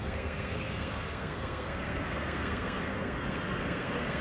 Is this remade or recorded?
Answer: remade